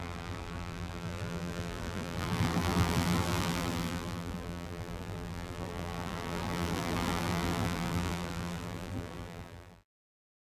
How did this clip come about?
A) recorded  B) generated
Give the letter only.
B